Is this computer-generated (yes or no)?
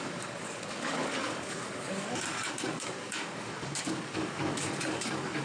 yes